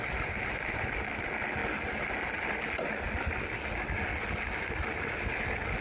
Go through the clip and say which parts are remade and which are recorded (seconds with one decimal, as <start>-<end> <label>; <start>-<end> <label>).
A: 0.0-5.8 recorded